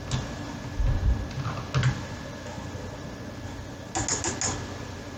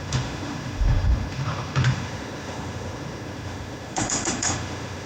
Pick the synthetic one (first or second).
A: second